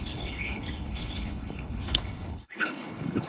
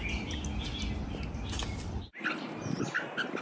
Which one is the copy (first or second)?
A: first